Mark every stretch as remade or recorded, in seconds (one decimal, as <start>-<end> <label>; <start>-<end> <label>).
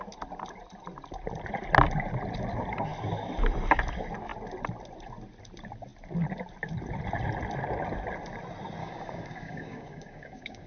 0.0-8.8 recorded; 8.8-10.7 remade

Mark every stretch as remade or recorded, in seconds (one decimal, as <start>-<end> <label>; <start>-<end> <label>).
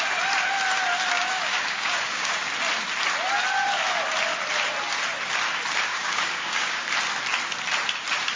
0.0-1.1 recorded; 1.1-2.5 remade; 2.5-5.9 recorded; 5.9-6.9 remade; 6.9-8.4 recorded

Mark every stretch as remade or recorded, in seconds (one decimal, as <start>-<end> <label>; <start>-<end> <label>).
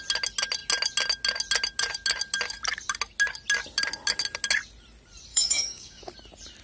0.0-5.3 recorded; 5.3-6.0 remade; 6.0-6.6 recorded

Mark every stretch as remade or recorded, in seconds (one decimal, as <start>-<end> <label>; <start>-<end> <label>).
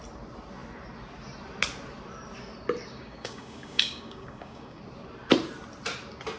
0.0-2.9 recorded; 2.9-4.8 remade; 4.8-6.4 recorded